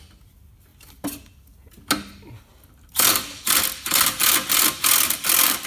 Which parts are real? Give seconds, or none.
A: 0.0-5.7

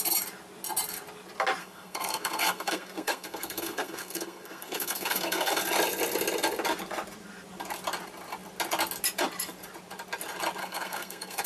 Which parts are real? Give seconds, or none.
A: 0.0-1.6; 5.6-10.6

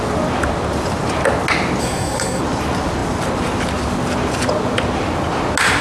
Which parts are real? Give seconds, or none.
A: 0.0-1.8; 2.4-5.8

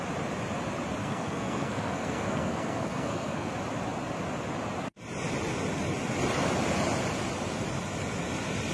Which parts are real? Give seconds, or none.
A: 0.0-1.0; 3.5-8.7

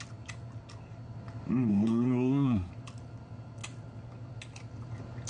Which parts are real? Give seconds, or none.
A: 0.0-1.7; 2.7-5.3

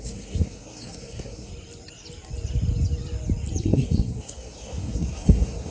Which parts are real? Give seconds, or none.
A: 1.5-3.6